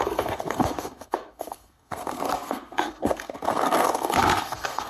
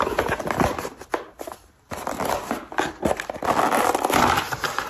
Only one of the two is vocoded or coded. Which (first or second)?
first